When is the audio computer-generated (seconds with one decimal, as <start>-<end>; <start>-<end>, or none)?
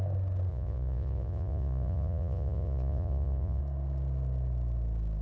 0.5-3.6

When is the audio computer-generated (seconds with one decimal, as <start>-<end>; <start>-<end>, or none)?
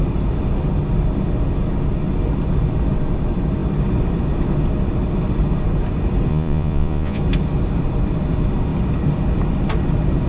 6.3-7.2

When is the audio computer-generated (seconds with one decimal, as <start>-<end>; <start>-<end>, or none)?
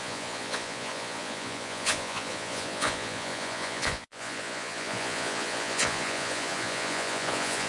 0.0-7.7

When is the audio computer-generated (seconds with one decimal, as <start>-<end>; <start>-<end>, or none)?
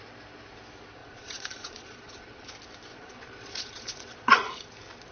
1.0-2.5; 2.9-4.6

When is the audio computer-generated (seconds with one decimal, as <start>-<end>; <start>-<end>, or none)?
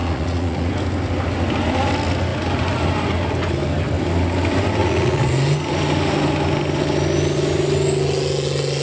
0.0-0.7; 4.8-5.3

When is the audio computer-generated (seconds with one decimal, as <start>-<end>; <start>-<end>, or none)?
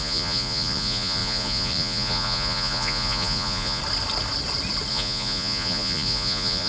0.0-3.8; 4.9-6.7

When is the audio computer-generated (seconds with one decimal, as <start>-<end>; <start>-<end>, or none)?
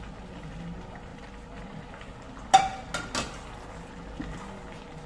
none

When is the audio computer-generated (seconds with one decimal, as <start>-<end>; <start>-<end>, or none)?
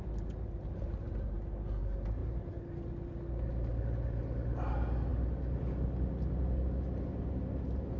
none